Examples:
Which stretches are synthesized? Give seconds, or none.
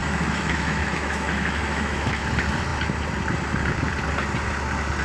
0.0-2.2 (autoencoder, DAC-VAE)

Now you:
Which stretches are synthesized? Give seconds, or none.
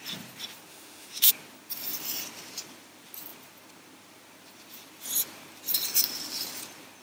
0.7-1.3 (autoencoder, DAC-VAE)